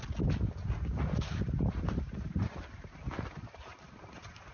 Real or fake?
real